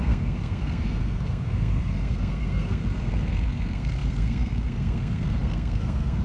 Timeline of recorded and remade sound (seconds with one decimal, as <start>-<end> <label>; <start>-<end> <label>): 0.0-6.2 remade